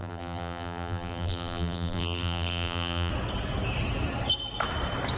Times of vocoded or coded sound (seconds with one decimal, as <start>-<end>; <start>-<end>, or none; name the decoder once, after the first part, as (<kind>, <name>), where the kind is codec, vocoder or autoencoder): 0.0-3.1 (vocoder, BigVGAN v2)